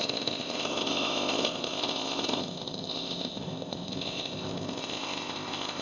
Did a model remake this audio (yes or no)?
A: yes